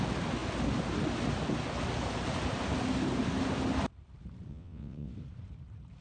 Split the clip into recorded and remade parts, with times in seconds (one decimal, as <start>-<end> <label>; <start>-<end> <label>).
0.0-4.5 recorded; 4.5-5.1 remade; 5.1-6.0 recorded

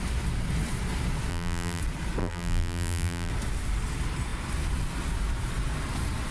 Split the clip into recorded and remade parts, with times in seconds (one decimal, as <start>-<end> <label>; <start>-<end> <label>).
0.0-1.3 recorded; 1.3-1.8 remade; 1.8-2.2 recorded; 2.2-3.3 remade; 3.3-6.3 recorded

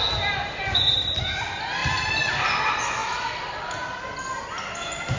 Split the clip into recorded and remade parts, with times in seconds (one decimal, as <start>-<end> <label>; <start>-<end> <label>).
0.0-0.6 recorded; 0.6-1.2 remade; 1.2-1.8 recorded; 1.8-2.6 remade; 2.6-5.2 recorded